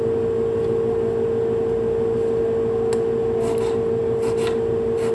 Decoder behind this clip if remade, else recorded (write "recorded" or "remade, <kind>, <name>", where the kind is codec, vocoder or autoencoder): recorded